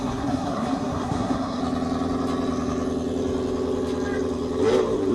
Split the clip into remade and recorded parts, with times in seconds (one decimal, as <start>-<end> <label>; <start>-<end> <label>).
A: 0.0-1.6 remade; 1.6-5.1 recorded